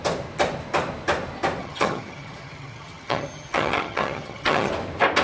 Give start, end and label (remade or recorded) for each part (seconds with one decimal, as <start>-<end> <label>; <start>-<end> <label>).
0.0-1.6 recorded; 1.6-4.7 remade; 4.7-5.2 recorded